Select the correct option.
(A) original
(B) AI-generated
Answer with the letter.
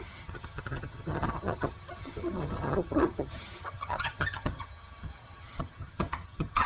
B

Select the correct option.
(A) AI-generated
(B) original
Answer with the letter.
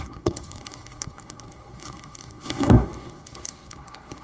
A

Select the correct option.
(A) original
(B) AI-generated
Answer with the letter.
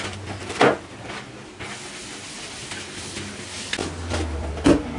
A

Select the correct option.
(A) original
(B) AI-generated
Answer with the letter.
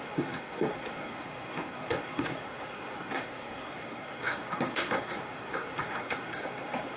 B